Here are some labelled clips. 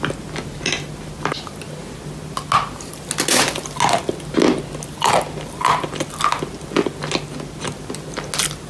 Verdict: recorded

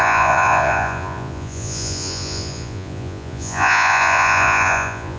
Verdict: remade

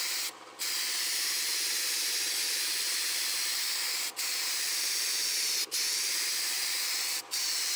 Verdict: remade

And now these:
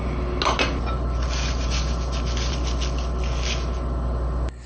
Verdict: recorded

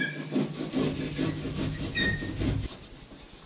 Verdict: recorded